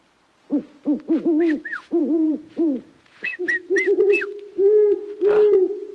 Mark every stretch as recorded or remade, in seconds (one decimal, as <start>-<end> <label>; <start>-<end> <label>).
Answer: 0.0-2.0 recorded; 2.0-3.4 remade; 3.4-5.9 recorded